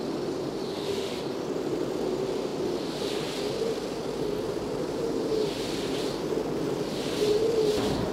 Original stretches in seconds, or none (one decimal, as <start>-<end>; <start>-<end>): 0.0-0.7; 1.2-8.1

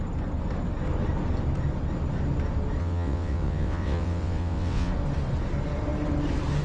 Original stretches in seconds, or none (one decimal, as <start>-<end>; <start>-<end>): 0.0-2.8; 4.9-6.6

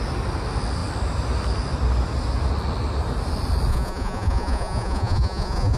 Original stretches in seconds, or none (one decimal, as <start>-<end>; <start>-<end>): 0.0-3.7

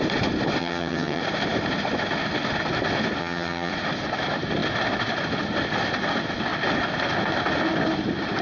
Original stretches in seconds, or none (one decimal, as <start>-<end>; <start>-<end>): 0.0-0.6; 1.2-3.2; 3.7-8.4

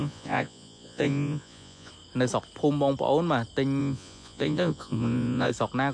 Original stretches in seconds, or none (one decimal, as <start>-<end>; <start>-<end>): 1.9-3.8; 5.5-5.9

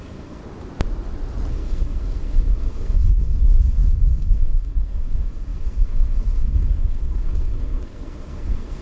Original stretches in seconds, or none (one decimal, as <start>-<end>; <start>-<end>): 0.4-1.5